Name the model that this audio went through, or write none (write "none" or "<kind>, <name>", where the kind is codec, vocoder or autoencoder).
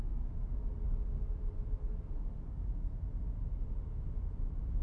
none